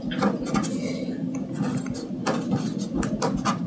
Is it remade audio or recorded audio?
recorded